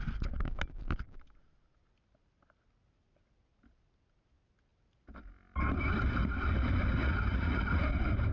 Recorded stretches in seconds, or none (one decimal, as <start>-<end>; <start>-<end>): 0.0-7.0; 7.6-8.3